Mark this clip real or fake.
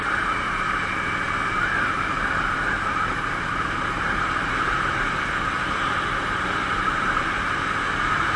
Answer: fake